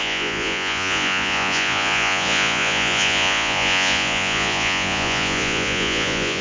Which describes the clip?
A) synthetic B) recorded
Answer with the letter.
A